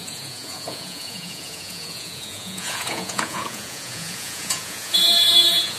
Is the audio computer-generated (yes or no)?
yes